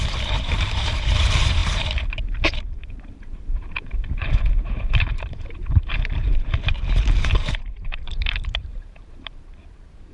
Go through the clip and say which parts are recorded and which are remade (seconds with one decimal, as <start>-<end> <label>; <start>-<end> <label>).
0.0-10.1 remade